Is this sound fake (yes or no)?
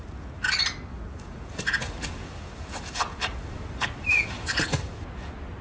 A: no